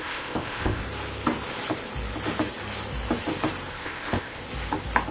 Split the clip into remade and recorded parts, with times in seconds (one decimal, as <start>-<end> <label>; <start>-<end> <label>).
0.0-0.8 remade; 0.8-3.7 recorded; 3.7-4.4 remade; 4.4-5.1 recorded